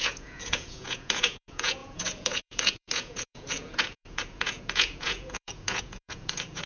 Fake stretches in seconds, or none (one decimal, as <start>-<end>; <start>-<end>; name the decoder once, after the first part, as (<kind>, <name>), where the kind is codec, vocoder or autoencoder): 0.0-6.7 (vocoder, Vocos)